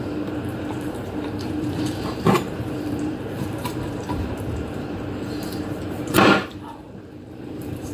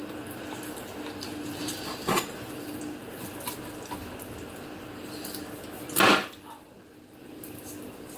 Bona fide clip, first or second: second